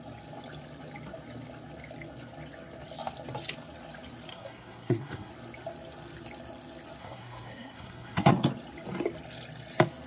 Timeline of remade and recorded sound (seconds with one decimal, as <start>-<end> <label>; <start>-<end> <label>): 0.0-4.3 recorded; 4.3-5.3 remade; 5.3-7.0 recorded; 7.0-8.3 remade; 8.3-10.1 recorded